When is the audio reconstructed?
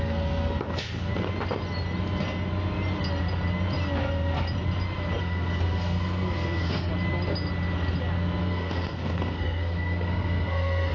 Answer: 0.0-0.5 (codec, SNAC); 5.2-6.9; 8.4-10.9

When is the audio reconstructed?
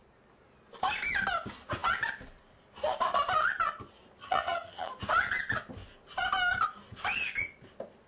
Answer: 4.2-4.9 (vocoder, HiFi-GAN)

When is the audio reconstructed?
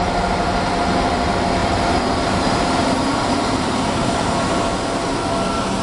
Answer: 1.6-5.1 (vocoder, BigVGAN v2)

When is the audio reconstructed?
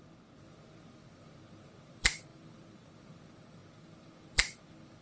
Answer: 0.0-5.0 (vocoder, BigVGAN v2)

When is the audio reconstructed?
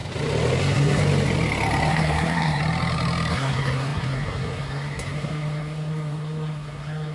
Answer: 0.6-1.0 (codec, SNAC); 1.9-2.6; 3.3-7.1